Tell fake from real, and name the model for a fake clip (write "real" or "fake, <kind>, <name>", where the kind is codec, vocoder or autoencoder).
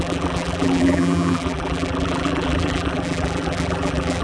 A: fake, vocoder, BigVGAN v2